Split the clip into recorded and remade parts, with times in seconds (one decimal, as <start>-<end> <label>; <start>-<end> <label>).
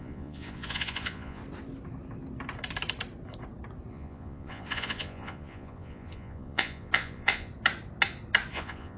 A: 0.0-1.4 remade; 1.4-3.9 recorded; 3.9-7.5 remade; 7.5-8.5 recorded; 8.5-9.0 remade